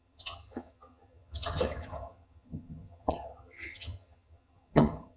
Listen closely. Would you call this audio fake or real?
fake